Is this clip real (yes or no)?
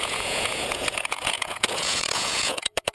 no